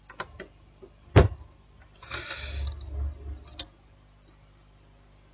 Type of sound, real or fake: real